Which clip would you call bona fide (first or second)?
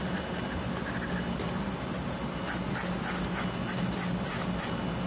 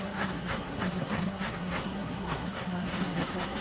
first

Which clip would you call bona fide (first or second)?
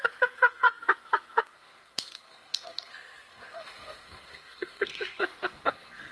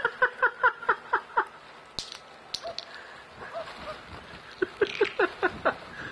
second